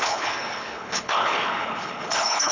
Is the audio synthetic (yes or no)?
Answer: yes